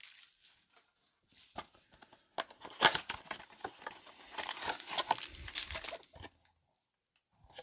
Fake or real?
real